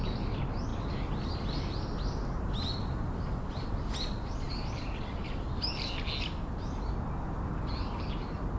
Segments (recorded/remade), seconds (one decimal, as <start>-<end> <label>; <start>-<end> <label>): 0.0-8.6 recorded